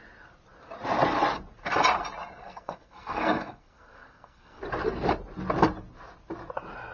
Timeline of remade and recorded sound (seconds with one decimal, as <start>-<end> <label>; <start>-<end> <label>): 0.0-2.4 recorded; 2.4-4.6 remade; 4.6-6.9 recorded